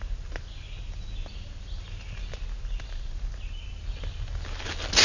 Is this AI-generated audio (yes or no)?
no